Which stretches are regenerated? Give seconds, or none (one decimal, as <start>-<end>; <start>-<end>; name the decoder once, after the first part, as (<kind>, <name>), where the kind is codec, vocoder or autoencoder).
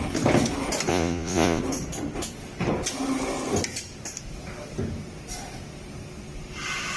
0.9-1.6 (vocoder, Vocos)